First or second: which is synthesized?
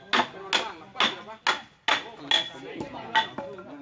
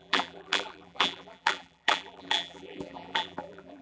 second